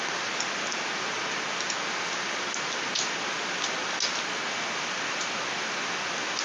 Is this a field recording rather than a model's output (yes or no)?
yes